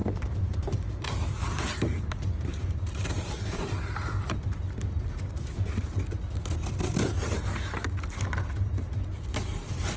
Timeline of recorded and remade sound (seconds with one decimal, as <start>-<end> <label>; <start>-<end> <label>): 0.0-3.6 remade; 3.6-10.0 recorded